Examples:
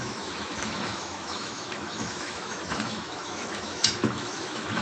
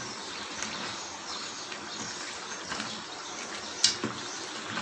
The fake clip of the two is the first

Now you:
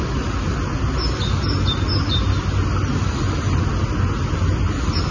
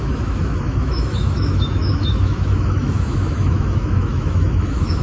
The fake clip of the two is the second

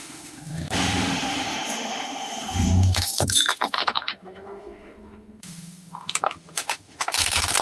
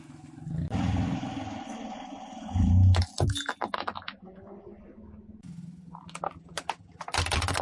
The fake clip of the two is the first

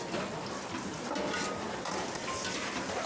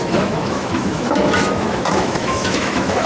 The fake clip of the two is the second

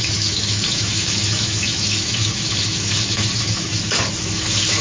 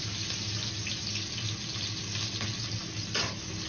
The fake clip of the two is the first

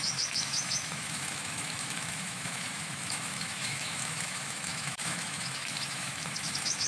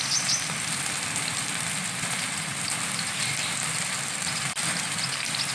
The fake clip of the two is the first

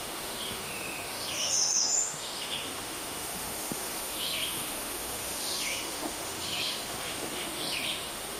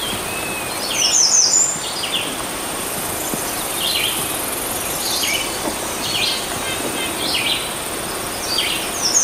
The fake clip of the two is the first